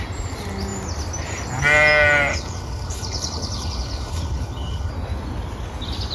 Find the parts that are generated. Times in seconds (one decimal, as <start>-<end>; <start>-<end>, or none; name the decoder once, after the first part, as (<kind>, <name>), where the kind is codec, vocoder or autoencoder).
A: 2.3-4.9 (codec, HILCodec)